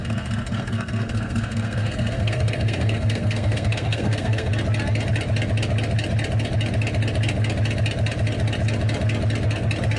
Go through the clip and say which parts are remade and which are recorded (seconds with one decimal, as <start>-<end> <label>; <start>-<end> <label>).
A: 0.0-4.5 remade; 4.5-10.0 recorded